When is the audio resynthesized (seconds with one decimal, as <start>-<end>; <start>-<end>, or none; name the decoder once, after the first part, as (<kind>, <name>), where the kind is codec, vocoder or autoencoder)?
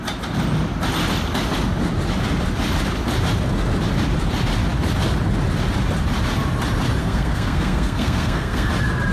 7.0-8.7 (codec, SNAC)